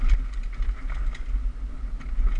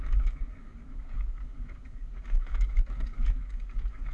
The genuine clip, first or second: first